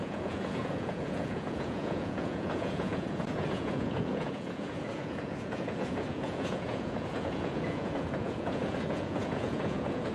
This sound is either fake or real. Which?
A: fake